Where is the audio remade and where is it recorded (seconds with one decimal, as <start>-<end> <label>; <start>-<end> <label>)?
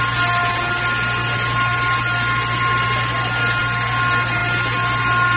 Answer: 0.0-5.4 recorded